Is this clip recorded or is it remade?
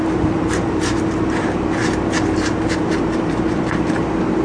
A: remade